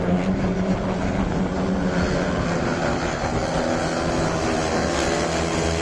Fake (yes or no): no